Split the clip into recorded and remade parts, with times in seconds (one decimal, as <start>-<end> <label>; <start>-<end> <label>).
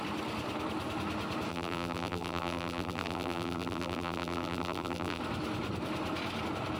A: 0.0-1.5 recorded; 1.5-5.2 remade; 5.2-6.8 recorded